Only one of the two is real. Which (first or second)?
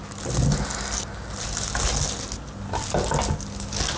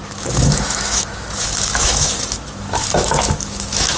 first